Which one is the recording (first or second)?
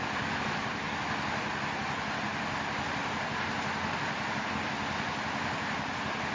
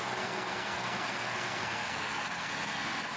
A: first